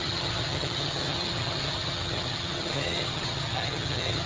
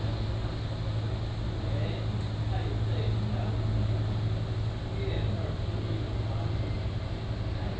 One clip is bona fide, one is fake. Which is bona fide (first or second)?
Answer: second